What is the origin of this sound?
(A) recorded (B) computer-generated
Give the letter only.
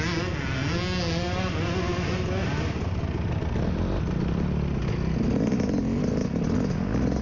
A